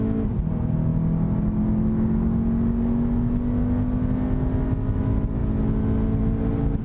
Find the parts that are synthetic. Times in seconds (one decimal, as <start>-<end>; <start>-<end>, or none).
none